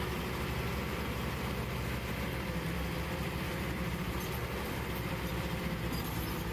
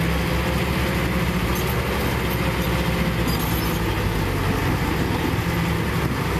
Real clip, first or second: second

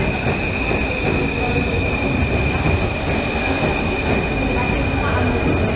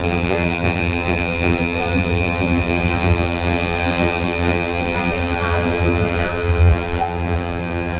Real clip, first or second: first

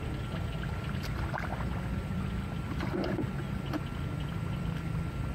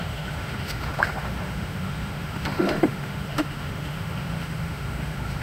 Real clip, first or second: first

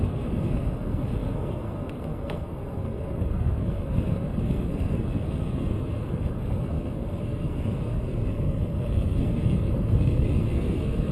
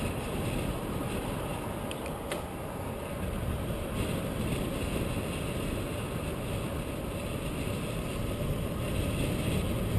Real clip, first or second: second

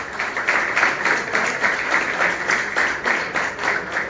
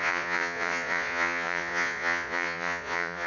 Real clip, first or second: first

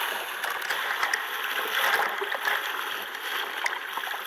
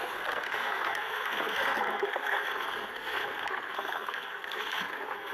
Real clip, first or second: first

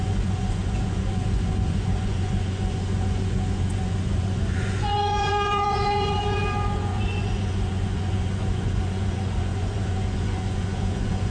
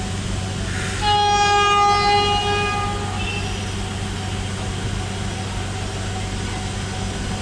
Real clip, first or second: second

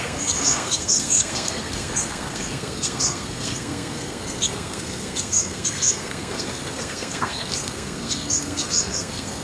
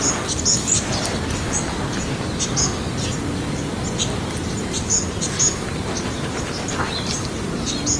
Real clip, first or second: second